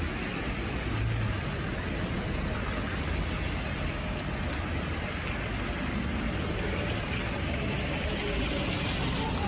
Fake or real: real